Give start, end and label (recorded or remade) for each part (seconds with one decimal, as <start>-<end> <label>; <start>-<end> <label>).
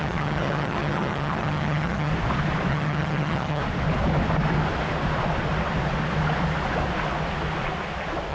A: 0.0-2.1 remade; 2.1-2.7 recorded; 2.7-3.6 remade; 3.6-8.3 recorded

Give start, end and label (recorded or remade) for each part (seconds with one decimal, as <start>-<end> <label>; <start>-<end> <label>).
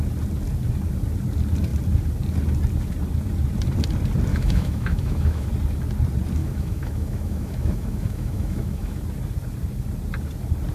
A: 0.0-4.3 recorded; 4.3-5.5 remade; 5.5-6.4 recorded; 6.4-9.0 remade; 9.0-10.7 recorded